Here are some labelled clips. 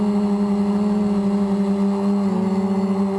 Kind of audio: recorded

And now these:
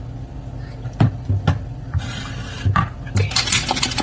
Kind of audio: recorded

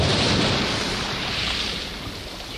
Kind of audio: recorded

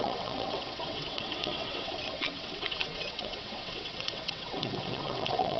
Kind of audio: remade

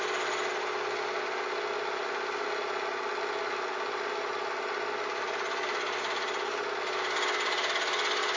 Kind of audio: recorded